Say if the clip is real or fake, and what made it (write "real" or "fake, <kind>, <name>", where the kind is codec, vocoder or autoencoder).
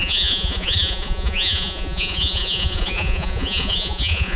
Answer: fake, vocoder, Vocos